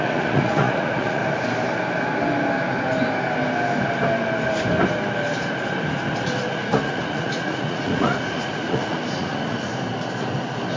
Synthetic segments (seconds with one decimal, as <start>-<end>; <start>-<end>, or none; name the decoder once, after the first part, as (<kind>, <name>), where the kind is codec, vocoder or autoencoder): 0.0-1.2 (vocoder, Vocos); 6.4-9.7